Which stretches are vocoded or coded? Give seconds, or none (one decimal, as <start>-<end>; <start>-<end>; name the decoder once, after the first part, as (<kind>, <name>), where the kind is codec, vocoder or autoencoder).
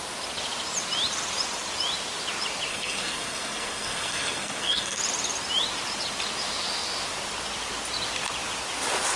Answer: 2.7-5.0 (codec, SNAC)